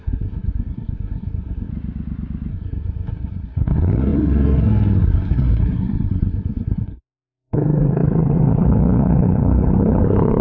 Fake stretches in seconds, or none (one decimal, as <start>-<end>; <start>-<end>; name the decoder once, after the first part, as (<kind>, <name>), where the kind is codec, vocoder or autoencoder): 0.0-1.7 (codec, SNAC); 2.5-10.4